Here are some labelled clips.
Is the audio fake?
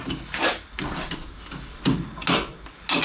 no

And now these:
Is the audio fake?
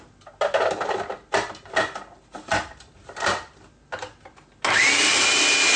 no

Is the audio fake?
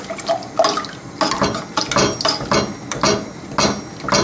no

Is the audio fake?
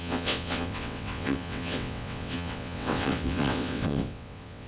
yes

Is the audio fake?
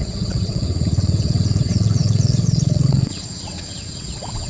yes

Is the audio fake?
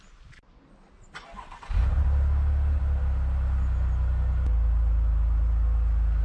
no